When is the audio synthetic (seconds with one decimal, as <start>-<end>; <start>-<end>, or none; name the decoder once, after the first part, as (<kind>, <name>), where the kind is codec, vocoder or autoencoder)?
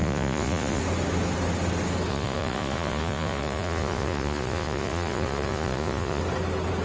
0.0-0.8 (vocoder, Vocos); 2.1-6.2